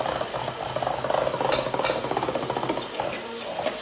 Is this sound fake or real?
real